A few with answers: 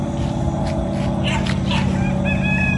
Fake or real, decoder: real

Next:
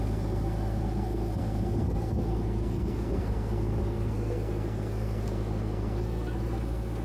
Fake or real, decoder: fake, codec, SNAC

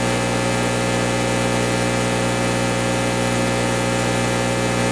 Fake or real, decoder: real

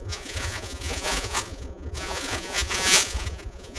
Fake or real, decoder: fake, vocoder, Vocos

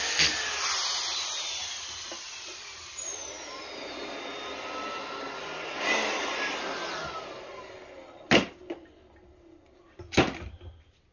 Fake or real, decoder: real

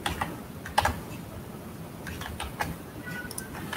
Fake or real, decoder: real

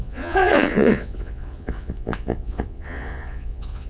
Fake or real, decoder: fake, vocoder, Vocos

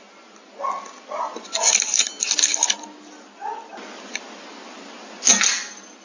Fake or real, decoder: real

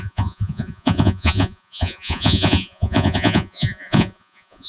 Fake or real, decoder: fake, vocoder, Vocos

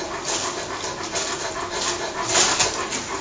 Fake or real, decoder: real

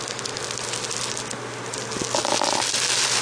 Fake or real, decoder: real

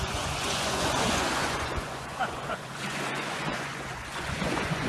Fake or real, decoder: fake, vocoder, Vocos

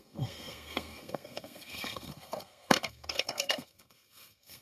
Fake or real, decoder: fake, codec, SNAC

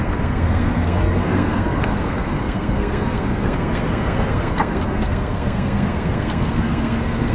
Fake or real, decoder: fake, codec, SNAC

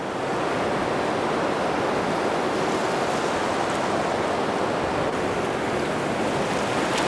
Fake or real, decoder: real